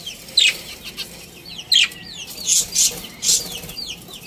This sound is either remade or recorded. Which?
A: recorded